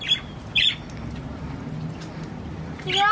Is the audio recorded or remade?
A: recorded